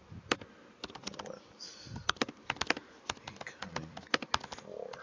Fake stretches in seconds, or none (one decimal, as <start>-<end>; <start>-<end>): none